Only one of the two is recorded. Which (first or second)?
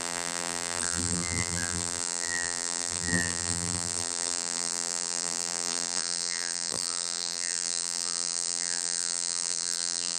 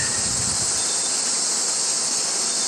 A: second